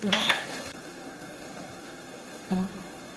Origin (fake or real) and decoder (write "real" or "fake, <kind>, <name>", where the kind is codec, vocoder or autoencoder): fake, codec, SNAC